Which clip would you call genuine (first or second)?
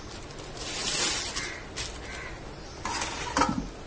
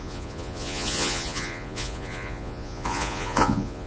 first